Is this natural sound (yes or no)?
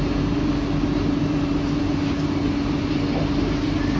yes